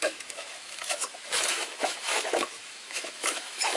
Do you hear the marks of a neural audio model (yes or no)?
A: yes